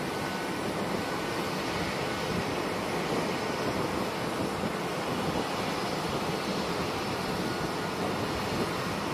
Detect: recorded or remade recorded